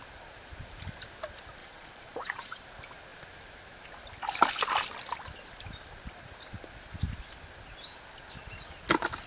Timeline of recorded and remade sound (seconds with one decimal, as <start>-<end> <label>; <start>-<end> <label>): 0.0-1.6 recorded; 1.6-2.6 remade; 2.6-9.3 recorded